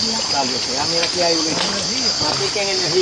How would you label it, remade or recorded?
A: recorded